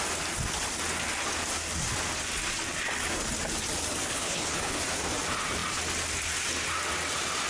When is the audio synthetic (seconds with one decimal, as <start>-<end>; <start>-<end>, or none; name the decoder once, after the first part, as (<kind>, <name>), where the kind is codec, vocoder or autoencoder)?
4.1-4.8 (codec, HILCodec)